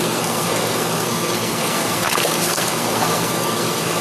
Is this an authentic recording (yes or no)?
no